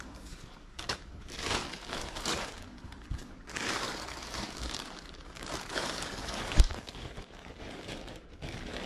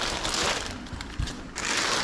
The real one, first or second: second